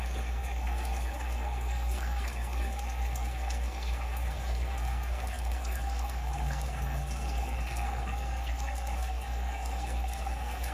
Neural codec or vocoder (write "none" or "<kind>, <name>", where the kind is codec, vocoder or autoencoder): codec, SNAC